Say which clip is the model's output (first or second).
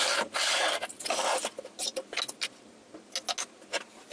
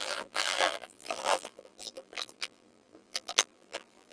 second